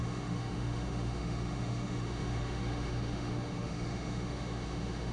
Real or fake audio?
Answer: fake